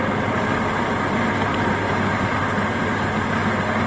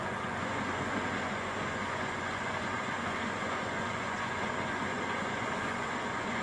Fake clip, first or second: second